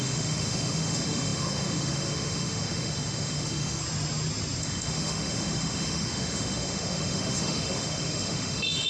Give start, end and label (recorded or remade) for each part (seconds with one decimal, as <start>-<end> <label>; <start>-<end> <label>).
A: 0.0-3.8 remade; 3.8-4.6 recorded; 4.6-8.9 remade